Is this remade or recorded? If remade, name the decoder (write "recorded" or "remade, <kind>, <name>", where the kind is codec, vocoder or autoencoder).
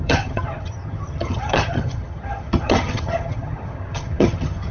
remade, vocoder, HiFi-GAN